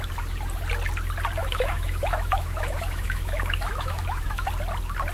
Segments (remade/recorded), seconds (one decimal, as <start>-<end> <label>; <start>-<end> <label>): 0.0-1.4 recorded; 1.4-4.5 remade; 4.5-5.1 recorded